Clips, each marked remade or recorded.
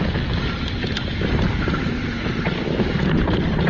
recorded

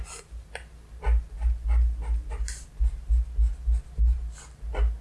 recorded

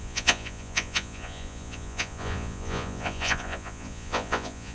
remade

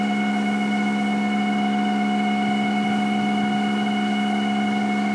recorded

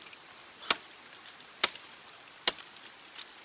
recorded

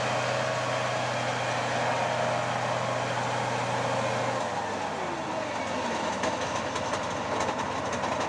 recorded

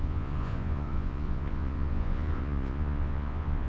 remade